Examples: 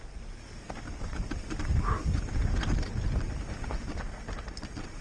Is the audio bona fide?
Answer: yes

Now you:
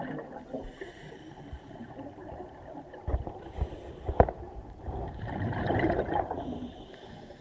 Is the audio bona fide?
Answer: no